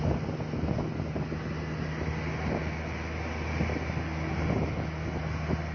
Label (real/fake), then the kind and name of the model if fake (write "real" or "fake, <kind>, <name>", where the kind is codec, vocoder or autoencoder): real